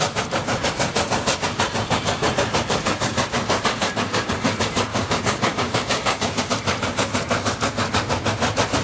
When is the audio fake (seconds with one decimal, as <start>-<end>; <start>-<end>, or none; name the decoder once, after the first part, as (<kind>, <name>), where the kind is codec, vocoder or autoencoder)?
3.8-4.3 (codec, DAC); 4.9-6.4